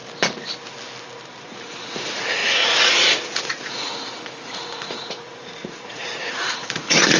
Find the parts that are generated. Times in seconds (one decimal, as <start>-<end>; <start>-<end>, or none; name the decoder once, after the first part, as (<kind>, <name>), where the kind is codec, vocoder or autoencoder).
1.4-7.2 (vocoder, Vocos)